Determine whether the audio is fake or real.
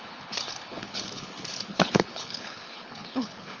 fake